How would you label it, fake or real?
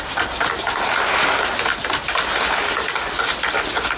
real